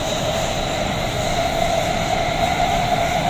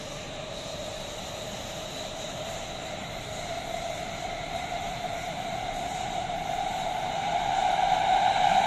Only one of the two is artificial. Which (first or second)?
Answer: second